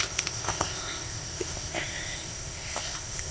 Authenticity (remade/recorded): remade